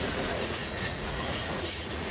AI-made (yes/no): yes